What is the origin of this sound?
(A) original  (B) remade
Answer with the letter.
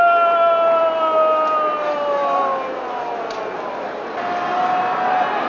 A